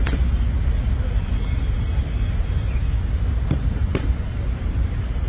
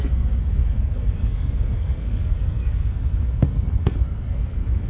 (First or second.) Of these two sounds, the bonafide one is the first